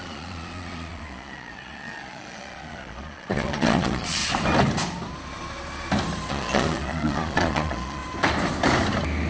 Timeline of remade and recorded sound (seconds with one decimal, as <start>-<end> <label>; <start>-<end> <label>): 0.0-4.2 remade; 4.2-6.3 recorded; 6.3-8.0 remade; 8.0-9.3 recorded